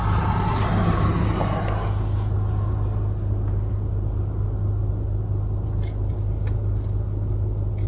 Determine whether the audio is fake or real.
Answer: real